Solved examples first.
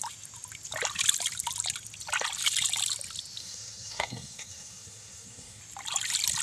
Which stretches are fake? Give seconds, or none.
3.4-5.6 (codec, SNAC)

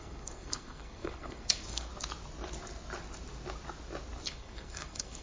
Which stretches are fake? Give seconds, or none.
0.0-1.9 (codec, SNAC); 4.3-5.2

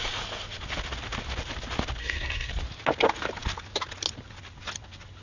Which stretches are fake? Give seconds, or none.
2.0-2.5 (codec, SNAC)

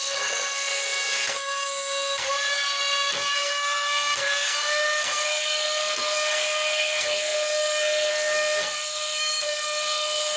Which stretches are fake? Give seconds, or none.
0.0-10.4 (codec, SNAC)

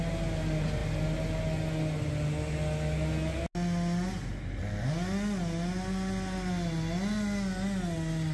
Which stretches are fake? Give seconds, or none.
none

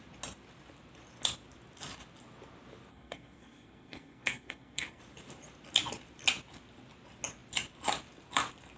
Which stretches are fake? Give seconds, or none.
2.9-5.0 (codec, SNAC)